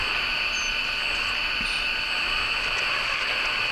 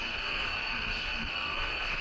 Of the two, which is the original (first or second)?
first